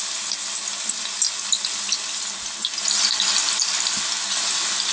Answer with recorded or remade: recorded